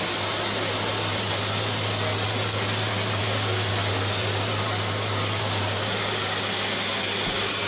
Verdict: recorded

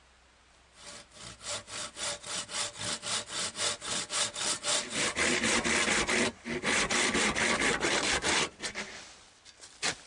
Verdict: recorded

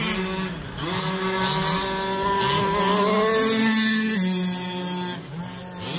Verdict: recorded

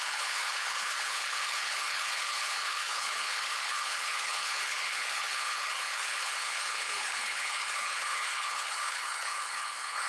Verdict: remade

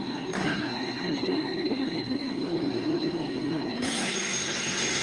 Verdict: remade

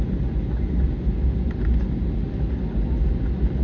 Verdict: recorded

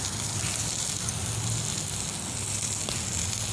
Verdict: recorded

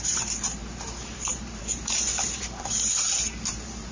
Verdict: remade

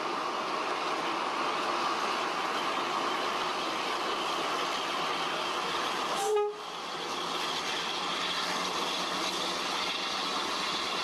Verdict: recorded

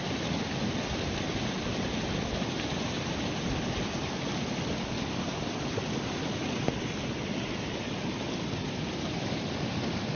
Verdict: recorded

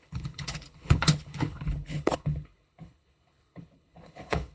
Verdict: remade